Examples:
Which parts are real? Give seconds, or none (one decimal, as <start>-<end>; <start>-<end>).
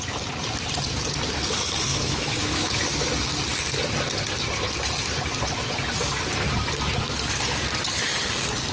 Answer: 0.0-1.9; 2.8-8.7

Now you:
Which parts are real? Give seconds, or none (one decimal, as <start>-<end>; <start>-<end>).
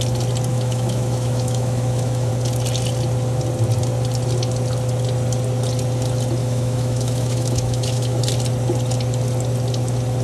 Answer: 0.0-0.5; 2.3-6.4; 8.2-10.2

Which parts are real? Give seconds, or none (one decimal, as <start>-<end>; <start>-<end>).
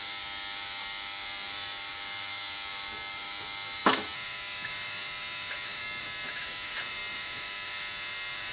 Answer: none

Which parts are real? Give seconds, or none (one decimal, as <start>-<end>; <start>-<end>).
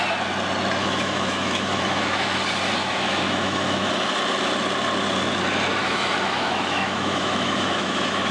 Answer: 0.0-0.8; 2.4-2.8; 3.9-5.8